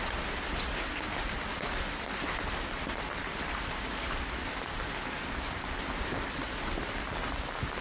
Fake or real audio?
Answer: real